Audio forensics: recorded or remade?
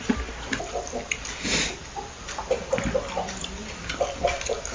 recorded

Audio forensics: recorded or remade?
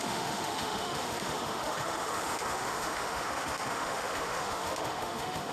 remade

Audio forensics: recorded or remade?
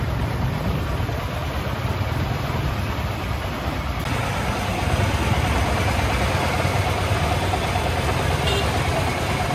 recorded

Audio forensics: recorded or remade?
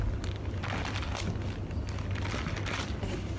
recorded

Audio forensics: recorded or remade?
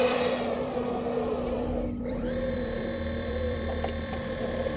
remade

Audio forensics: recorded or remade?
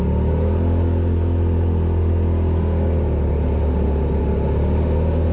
recorded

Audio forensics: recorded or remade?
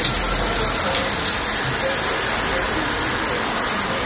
recorded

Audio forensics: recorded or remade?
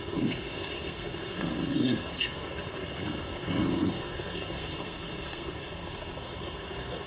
remade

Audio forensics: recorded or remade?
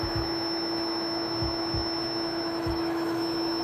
remade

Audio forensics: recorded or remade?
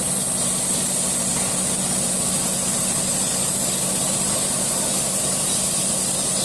recorded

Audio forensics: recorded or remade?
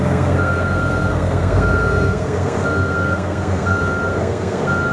remade